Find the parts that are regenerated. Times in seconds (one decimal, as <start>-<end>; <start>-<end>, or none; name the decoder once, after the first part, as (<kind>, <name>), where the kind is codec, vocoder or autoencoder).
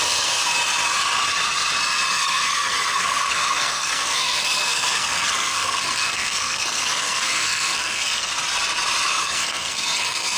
0.0-0.4 (codec, SNAC); 2.1-8.3; 9.2-10.4